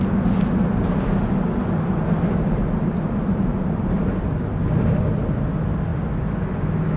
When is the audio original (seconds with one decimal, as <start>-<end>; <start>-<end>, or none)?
0.0-3.5; 4.6-7.0